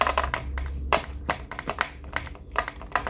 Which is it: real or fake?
real